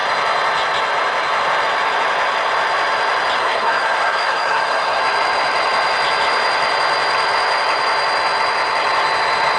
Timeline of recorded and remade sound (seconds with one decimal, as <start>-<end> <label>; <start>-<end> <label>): 0.0-3.4 recorded; 3.4-5.0 remade; 5.0-9.6 recorded